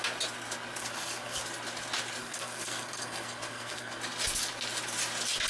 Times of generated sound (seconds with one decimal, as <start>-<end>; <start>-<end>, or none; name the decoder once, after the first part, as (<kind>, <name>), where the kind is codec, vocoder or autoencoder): 0.8-1.4 (codec, SNAC); 2.2-4.0